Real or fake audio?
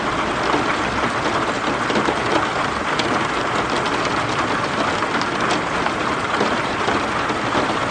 real